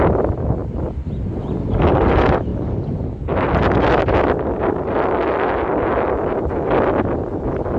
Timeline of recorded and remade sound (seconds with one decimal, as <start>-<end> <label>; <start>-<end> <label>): 0.0-7.8 recorded